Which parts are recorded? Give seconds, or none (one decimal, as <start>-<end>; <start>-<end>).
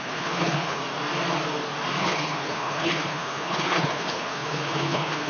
0.8-2.0